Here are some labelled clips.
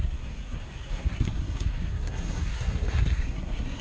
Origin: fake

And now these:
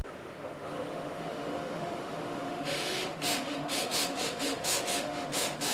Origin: fake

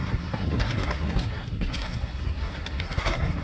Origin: fake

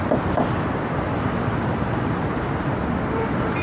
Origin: fake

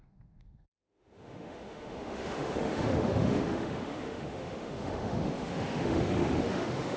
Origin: fake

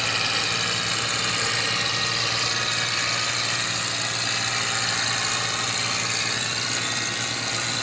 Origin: real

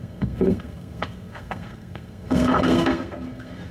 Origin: fake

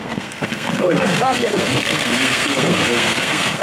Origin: fake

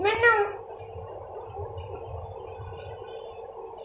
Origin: real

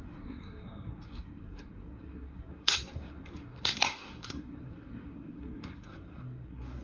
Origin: fake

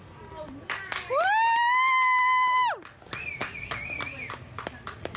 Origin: real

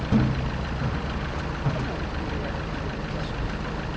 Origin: real